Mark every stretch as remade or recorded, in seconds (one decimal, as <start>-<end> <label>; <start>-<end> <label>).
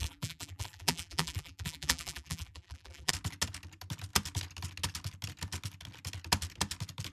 0.0-3.1 remade; 3.1-7.1 recorded